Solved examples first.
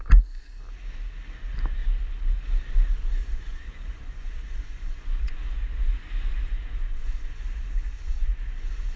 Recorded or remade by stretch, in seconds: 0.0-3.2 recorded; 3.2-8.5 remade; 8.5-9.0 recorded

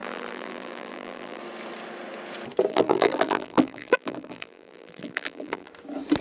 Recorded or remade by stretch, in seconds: 0.0-1.4 remade; 1.4-2.7 recorded; 2.7-5.7 remade; 5.7-6.2 recorded

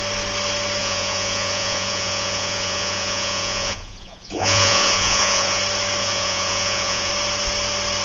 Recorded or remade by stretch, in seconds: 0.0-0.8 recorded; 0.8-5.6 remade; 5.6-6.0 recorded; 6.0-7.1 remade; 7.1-8.0 recorded

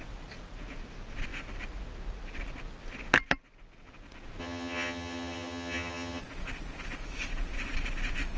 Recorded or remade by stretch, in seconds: 0.0-4.4 recorded; 4.4-6.2 remade; 6.2-8.4 recorded

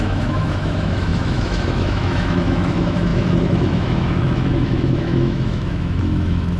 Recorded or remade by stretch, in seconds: 0.0-6.6 remade

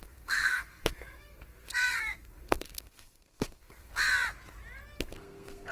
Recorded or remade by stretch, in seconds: 0.0-3.9 remade; 3.9-5.0 recorded; 5.0-5.7 remade